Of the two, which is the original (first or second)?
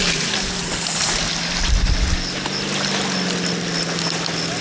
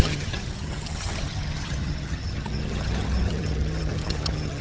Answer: first